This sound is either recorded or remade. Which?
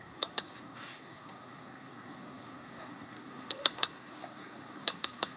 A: remade